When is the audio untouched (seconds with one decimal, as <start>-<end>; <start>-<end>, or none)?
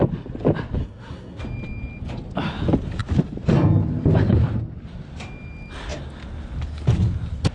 0.0-0.8; 1.4-7.5